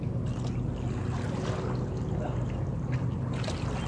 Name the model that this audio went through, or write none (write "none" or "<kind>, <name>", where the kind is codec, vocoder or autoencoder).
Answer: none